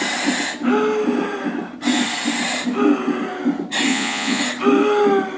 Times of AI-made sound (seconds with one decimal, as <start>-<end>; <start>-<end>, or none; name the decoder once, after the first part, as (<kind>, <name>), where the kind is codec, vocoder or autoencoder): 3.9-4.4 (vocoder, Vocos)